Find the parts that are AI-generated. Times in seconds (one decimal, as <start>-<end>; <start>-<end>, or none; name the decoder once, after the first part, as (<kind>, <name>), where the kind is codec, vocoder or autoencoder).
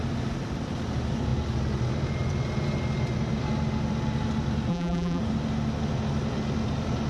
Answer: 4.7-5.2 (vocoder, BigVGAN v2)